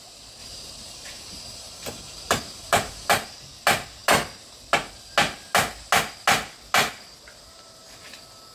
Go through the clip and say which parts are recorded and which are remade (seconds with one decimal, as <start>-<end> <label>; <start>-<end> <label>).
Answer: 0.0-0.4 recorded; 0.4-3.1 remade; 3.1-8.5 recorded

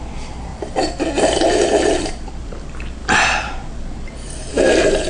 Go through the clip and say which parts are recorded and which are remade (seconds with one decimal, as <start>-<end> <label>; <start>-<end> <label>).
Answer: 0.0-0.5 remade; 0.5-2.0 recorded; 2.0-5.1 remade

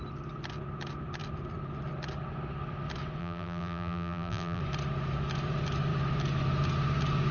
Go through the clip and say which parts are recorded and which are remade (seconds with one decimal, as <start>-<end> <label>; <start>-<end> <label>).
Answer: 0.0-3.2 recorded; 3.2-4.6 remade; 4.6-7.3 recorded

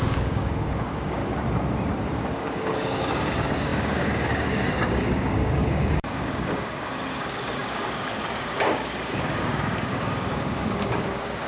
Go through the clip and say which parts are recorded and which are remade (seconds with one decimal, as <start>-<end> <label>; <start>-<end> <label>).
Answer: 0.0-1.2 remade; 1.2-2.3 recorded; 2.3-11.5 remade

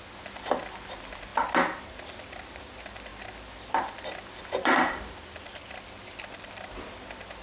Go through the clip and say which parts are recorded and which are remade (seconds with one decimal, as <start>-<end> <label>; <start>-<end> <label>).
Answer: 0.0-1.3 remade; 1.3-1.8 recorded; 1.8-3.1 remade; 3.1-4.3 recorded; 4.3-7.4 remade